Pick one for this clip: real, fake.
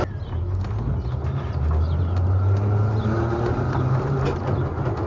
real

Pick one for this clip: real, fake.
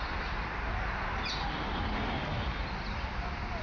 real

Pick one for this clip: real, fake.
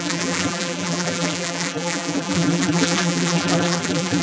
fake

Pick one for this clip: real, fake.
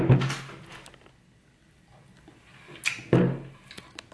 real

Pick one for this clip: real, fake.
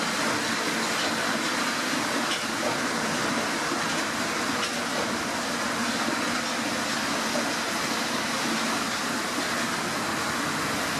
real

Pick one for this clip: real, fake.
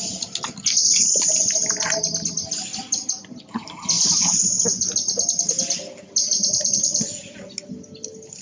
real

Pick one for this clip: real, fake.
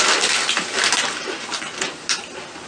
real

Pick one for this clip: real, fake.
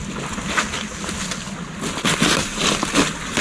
real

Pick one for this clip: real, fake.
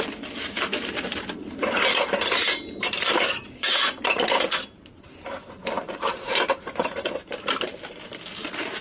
fake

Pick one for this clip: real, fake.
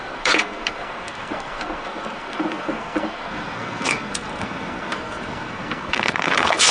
fake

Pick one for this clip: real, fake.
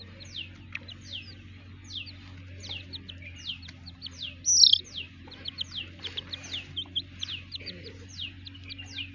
real